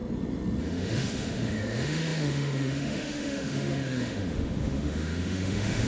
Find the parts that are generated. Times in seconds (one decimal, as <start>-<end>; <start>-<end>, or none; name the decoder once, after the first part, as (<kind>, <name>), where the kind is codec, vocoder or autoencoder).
0.6-5.9 (autoencoder, DAC-VAE)